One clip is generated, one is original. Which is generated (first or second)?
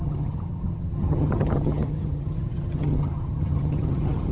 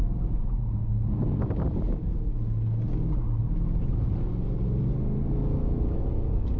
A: first